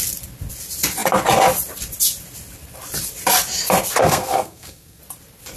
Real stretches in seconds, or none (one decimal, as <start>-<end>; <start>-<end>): 0.0-4.0; 5.0-5.6